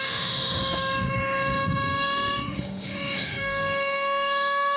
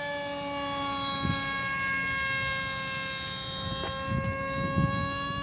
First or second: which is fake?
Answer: first